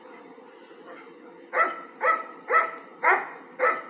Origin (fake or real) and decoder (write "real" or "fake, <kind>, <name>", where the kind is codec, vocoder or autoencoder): real